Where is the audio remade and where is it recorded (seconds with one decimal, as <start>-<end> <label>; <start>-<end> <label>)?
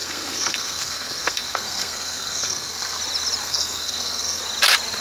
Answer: 0.0-3.0 remade; 3.0-3.4 recorded; 3.4-4.4 remade; 4.4-5.0 recorded